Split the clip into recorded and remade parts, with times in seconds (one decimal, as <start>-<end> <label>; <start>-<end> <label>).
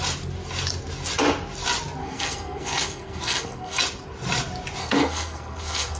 0.0-2.0 recorded; 2.0-3.8 remade; 3.8-4.8 recorded; 4.8-6.0 remade